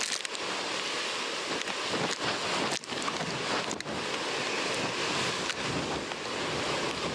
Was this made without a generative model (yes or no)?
yes